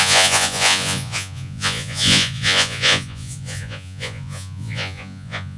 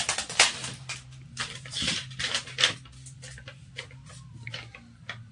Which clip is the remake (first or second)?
first